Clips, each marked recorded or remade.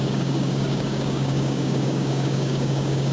remade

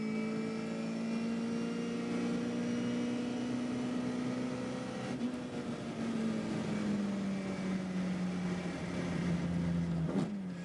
recorded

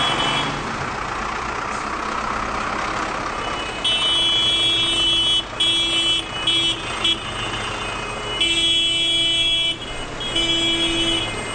recorded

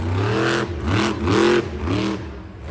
recorded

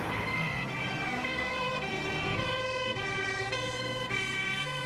remade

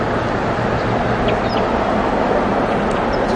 recorded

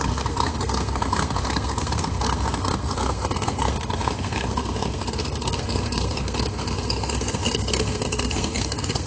remade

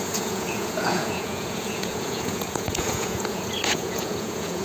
remade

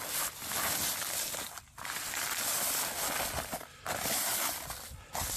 recorded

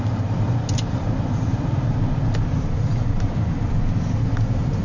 recorded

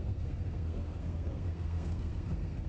remade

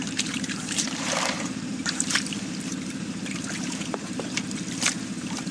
remade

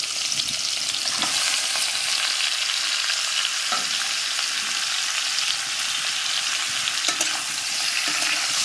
recorded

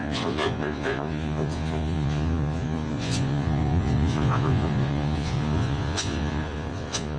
remade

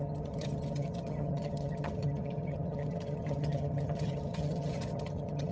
remade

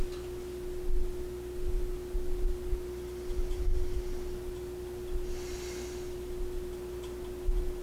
recorded